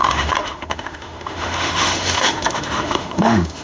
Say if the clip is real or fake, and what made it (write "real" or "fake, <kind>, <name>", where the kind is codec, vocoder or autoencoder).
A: fake, autoencoder, DAC-VAE